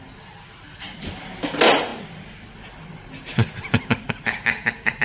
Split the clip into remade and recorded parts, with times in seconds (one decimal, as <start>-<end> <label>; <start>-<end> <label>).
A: 0.0-5.0 recorded